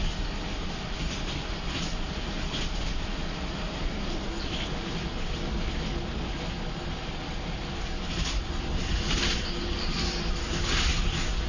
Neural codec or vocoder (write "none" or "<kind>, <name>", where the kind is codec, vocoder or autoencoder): none